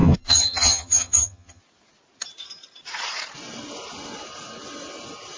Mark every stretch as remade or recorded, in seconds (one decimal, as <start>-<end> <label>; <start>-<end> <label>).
0.0-1.6 remade; 1.6-5.4 recorded